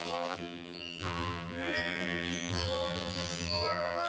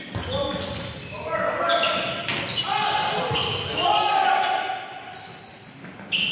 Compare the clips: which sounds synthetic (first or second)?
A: first